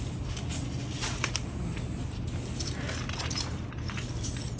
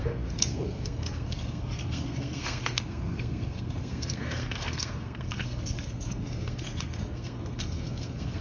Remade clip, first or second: second